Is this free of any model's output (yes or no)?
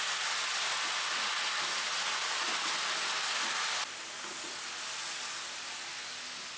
yes